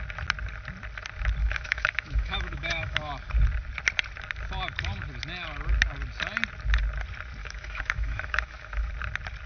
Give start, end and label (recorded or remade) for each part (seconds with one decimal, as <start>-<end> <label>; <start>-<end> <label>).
0.0-1.4 recorded; 1.4-3.1 remade; 3.1-7.4 recorded; 7.4-8.9 remade; 8.9-9.5 recorded